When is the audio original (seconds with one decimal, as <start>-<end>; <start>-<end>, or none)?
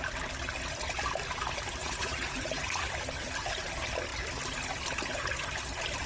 0.0-1.8; 2.9-6.1